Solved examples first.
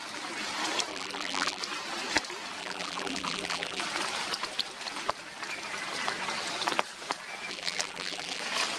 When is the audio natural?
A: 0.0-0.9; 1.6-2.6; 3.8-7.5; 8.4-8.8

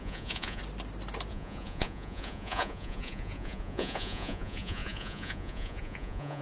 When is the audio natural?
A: 0.6-1.3

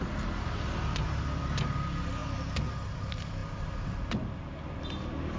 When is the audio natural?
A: 0.0-5.4

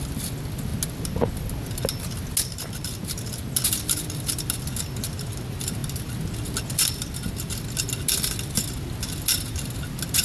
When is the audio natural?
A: 0.0-10.2